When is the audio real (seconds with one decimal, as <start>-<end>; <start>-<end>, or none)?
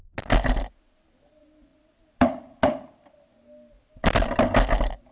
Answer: 0.0-5.1